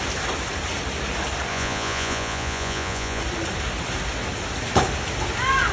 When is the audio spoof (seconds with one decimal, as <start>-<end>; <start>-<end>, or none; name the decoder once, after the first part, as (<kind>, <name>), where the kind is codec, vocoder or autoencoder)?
1.5-3.2 (vocoder, Vocos)